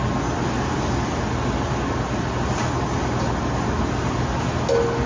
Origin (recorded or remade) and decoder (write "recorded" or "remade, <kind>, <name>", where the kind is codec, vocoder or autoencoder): recorded